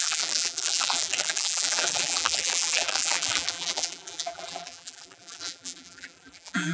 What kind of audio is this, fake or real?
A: fake